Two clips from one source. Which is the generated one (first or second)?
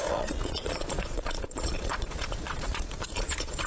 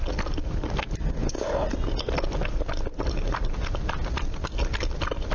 first